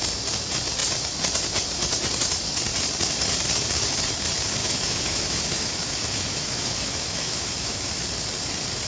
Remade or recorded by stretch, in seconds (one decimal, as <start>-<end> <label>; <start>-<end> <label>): 0.0-4.6 recorded; 4.6-7.9 remade; 7.9-8.9 recorded